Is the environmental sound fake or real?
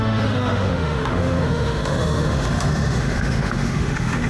fake